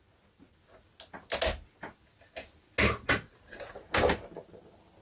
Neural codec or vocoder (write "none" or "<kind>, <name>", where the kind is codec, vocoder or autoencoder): none